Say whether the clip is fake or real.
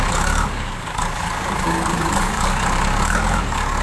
fake